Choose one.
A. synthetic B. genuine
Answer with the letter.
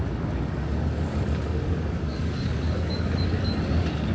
A